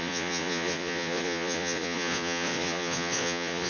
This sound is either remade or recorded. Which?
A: remade